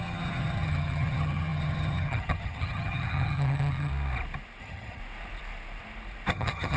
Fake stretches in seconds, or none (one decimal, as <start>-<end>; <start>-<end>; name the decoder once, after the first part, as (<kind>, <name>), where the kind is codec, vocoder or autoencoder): 0.0-3.9 (vocoder, HiFi-GAN); 4.6-5.0; 6.3-6.8

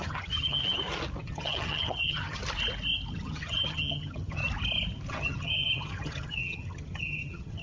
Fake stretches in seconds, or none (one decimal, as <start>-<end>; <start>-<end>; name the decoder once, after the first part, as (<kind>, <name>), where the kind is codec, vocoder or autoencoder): 0.0-0.6 (vocoder, HiFi-GAN); 1.2-2.4; 3.1-4.4; 5.1-7.6